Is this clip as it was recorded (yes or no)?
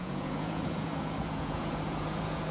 no